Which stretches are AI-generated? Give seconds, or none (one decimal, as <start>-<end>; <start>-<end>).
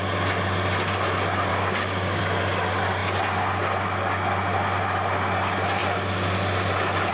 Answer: 1.5-2.2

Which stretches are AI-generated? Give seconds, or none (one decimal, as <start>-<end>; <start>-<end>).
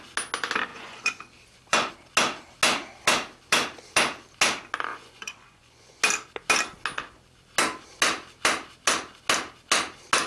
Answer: 0.7-1.9; 4.9-6.0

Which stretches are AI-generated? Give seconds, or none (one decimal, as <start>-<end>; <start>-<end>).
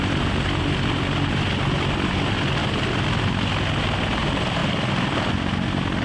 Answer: none